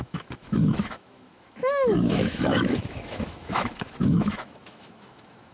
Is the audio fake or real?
fake